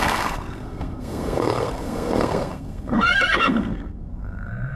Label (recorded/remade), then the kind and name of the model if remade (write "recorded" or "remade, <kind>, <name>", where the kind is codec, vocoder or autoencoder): remade, codec, SNAC